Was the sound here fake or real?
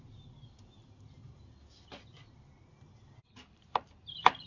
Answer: real